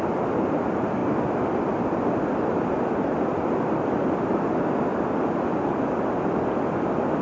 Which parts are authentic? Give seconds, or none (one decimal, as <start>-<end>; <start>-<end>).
0.0-7.2

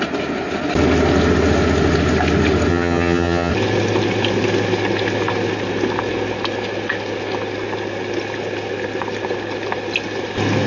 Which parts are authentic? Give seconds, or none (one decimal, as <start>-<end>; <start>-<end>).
0.0-2.7; 3.5-10.7

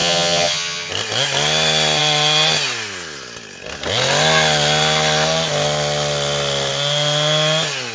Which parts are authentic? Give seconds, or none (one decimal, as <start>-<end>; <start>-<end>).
0.9-7.9

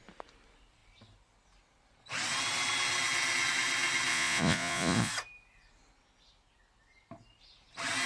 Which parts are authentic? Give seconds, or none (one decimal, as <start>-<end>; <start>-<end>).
0.0-4.1; 5.1-8.1

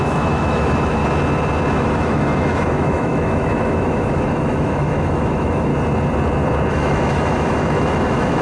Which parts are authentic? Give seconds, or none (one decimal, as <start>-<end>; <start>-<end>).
1.0-1.7; 5.7-6.7

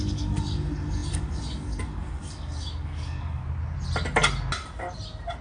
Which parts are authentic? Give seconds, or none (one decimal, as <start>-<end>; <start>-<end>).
3.4-5.4